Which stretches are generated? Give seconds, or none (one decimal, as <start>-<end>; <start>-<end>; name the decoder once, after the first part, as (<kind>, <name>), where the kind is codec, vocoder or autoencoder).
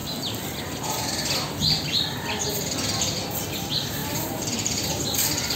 none